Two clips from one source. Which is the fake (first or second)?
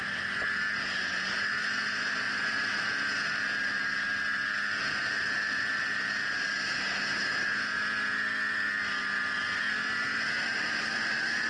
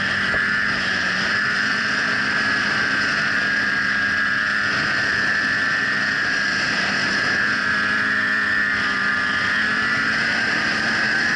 second